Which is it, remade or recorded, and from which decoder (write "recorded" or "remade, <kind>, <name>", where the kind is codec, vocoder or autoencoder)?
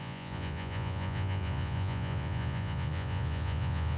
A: remade, vocoder, Vocos